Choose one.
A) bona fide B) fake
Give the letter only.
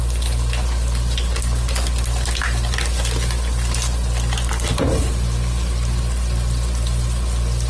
A